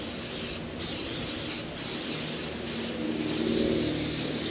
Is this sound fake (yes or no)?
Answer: no